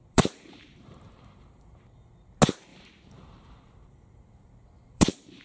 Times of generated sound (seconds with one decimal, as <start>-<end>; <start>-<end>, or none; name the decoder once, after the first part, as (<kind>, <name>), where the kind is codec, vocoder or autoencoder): 0.0-1.8 (vocoder, BigVGAN v2); 2.7-5.4